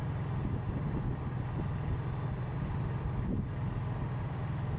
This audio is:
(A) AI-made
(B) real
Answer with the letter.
B